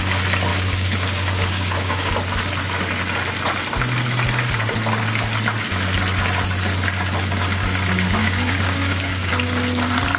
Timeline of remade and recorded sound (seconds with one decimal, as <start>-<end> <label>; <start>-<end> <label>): 0.0-0.5 recorded; 0.5-2.1 remade; 2.1-8.2 recorded; 8.2-9.3 remade; 9.3-10.2 recorded